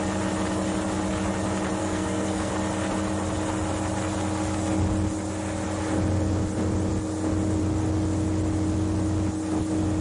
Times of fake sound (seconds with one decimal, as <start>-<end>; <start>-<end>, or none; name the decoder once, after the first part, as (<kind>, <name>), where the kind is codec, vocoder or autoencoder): 1.8-2.5 (codec, SNAC)